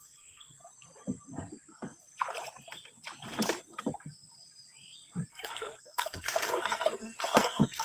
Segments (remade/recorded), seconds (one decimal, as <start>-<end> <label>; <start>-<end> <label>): 0.0-0.6 remade; 0.6-5.3 recorded; 5.3-7.8 remade